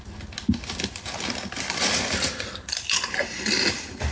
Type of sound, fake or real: real